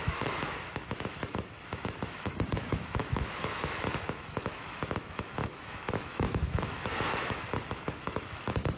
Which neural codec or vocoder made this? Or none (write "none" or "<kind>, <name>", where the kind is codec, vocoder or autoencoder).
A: autoencoder, DAC-VAE